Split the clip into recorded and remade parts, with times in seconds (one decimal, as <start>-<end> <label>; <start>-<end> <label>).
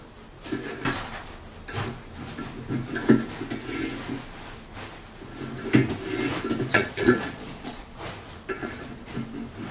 0.0-6.7 recorded; 6.7-8.0 remade; 8.0-8.6 recorded; 8.6-9.1 remade; 9.1-9.7 recorded